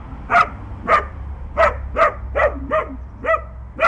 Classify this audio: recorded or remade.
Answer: recorded